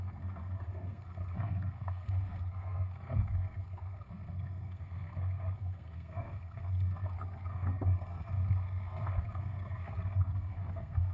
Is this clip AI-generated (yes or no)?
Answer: yes